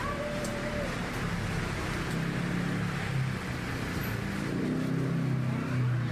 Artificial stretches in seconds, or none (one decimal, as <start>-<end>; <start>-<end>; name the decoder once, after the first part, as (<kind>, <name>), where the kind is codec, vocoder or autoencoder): none